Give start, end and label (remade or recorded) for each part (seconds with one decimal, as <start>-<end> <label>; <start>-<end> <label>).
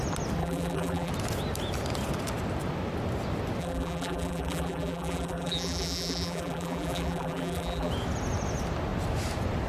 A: 0.0-0.4 recorded; 0.4-1.1 remade; 1.1-3.6 recorded; 3.6-7.9 remade; 7.9-9.7 recorded